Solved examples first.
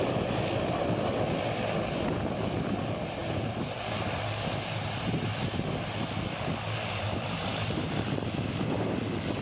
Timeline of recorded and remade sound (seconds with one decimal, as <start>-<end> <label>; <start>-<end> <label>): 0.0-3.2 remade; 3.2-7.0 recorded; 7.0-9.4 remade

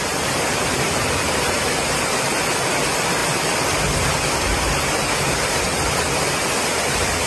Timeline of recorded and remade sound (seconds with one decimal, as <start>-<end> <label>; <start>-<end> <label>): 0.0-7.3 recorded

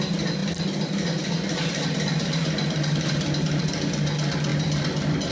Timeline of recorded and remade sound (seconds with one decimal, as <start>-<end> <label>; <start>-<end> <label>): 0.0-5.3 recorded

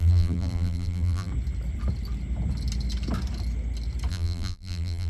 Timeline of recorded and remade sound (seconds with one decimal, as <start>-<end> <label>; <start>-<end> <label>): 0.0-1.3 remade; 1.3-4.1 recorded; 4.1-5.1 remade